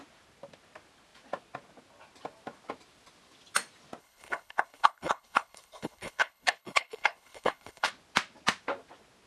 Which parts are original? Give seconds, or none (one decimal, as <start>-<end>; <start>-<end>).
0.0-4.0; 7.9-9.3

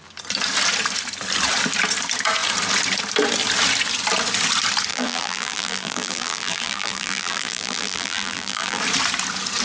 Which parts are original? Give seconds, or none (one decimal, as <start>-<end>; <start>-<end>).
0.0-4.9; 8.8-9.6

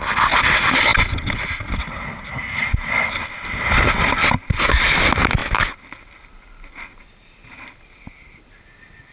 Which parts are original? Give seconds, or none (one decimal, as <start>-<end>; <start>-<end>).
0.0-9.1